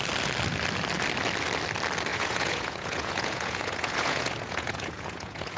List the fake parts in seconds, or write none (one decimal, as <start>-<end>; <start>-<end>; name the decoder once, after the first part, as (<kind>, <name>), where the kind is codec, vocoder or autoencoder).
2.1-5.6 (vocoder, Vocos)